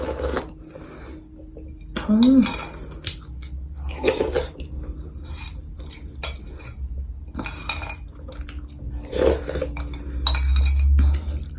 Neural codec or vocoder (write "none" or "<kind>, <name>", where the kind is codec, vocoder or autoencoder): none